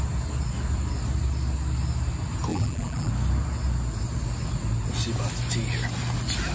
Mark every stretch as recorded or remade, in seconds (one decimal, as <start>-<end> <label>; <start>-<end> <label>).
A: 0.0-2.5 recorded; 2.5-3.1 remade; 3.1-6.5 recorded